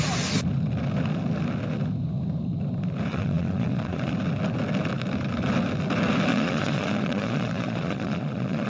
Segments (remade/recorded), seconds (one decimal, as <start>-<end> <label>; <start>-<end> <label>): 0.0-3.1 recorded; 3.1-4.1 remade; 4.1-6.3 recorded; 6.3-8.7 remade